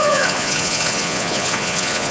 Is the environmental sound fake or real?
fake